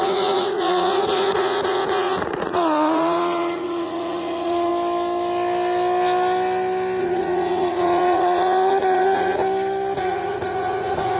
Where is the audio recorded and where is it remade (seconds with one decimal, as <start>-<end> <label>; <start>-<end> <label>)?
0.0-4.7 remade; 4.7-7.0 recorded; 7.0-9.4 remade; 9.4-10.0 recorded; 10.0-11.2 remade